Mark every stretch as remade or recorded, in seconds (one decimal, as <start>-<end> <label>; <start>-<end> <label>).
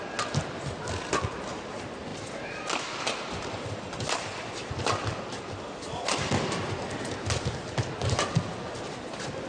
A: 0.0-9.5 recorded